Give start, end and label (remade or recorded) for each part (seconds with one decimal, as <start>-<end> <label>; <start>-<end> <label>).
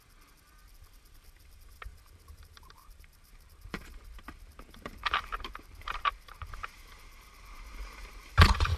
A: 0.0-1.9 recorded; 1.9-6.8 remade; 6.8-8.8 recorded